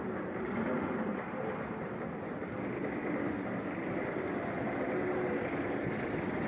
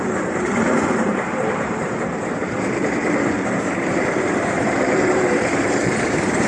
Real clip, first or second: first